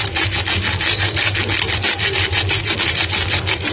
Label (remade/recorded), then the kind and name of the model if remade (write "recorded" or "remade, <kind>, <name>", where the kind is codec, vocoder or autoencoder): recorded